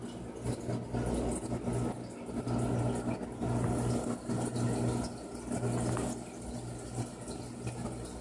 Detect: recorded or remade recorded